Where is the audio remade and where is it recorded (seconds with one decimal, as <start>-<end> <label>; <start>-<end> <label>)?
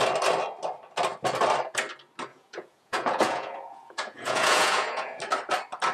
0.0-2.3 recorded; 2.3-5.2 remade; 5.2-5.9 recorded